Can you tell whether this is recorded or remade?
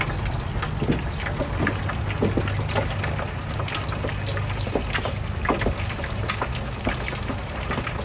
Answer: recorded